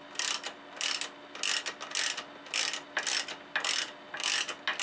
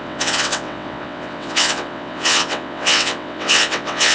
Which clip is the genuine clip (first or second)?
first